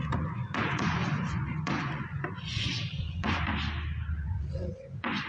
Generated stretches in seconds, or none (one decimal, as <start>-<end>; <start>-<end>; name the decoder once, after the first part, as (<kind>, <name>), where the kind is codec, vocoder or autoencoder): 0.0-3.5 (vocoder, Vocos); 4.1-5.3